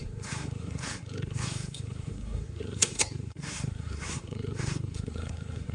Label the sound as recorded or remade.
remade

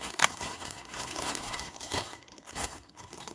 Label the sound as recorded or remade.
remade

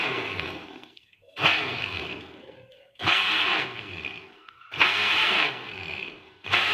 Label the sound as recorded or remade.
remade